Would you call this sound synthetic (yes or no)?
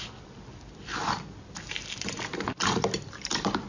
no